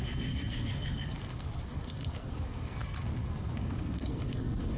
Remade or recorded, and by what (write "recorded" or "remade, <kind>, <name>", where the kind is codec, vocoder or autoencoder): remade, codec, SNAC